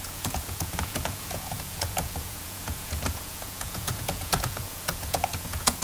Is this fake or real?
fake